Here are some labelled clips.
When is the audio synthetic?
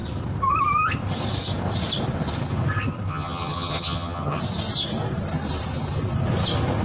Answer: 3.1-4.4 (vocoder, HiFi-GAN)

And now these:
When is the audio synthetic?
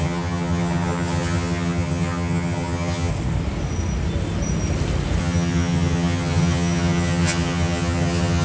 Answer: 0.0-3.1 (vocoder, HiFi-GAN); 5.2-8.4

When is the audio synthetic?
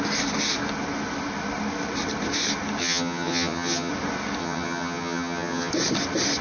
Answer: 2.8-3.9 (vocoder, HiFi-GAN); 4.4-5.7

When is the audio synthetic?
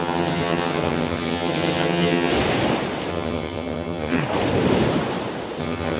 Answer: 0.0-2.3 (vocoder, HiFi-GAN); 3.1-4.2; 5.6-6.0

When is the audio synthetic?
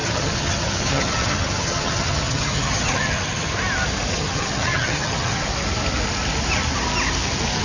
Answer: 0.0-3.5 (vocoder, HiFi-GAN); 4.1-5.5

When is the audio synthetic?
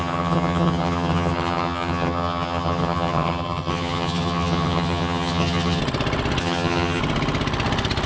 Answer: 0.0-5.8 (vocoder, HiFi-GAN); 6.4-7.0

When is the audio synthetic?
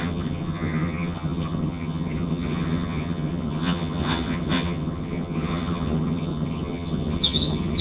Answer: 0.0-7.8 (vocoder, HiFi-GAN)